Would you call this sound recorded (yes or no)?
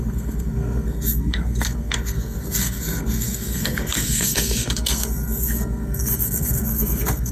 no